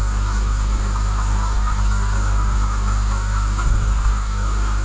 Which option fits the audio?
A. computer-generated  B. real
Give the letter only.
A